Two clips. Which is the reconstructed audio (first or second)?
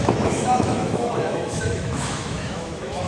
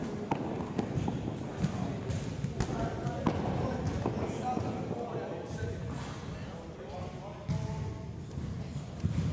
first